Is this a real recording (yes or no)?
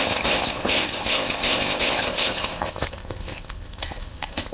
no